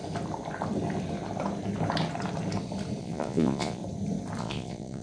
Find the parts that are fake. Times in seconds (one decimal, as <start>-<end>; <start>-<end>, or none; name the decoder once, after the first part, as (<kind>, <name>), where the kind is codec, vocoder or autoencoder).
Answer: 3.0-3.8 (vocoder, Vocos); 4.4-5.0